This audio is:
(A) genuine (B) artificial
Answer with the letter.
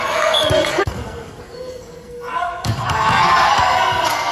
B